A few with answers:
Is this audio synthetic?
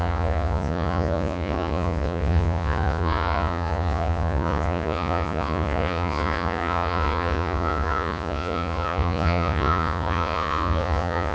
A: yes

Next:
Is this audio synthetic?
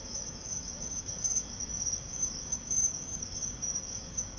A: yes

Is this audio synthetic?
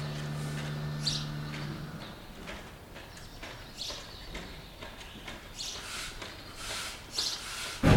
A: no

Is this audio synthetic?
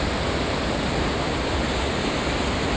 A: no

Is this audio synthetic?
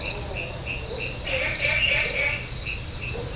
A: no